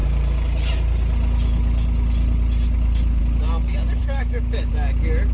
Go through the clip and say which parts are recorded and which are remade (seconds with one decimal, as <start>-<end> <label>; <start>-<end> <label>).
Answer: 0.0-4.0 recorded; 4.0-4.7 remade; 4.7-5.3 recorded